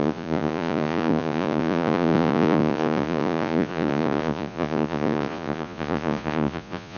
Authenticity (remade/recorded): remade